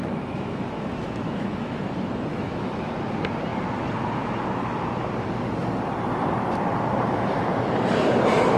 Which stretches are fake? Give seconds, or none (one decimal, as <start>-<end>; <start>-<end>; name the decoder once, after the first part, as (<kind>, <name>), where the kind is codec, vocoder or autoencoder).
0.0-1.8 (autoencoder, DAC-VAE); 2.3-2.9